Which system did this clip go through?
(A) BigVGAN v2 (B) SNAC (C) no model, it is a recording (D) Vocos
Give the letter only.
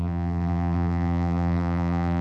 A